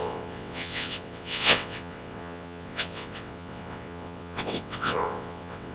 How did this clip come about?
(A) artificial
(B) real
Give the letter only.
A